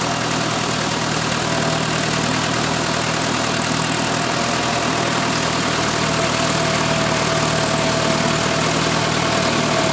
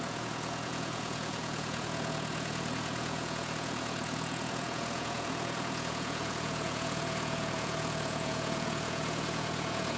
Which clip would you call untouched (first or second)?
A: first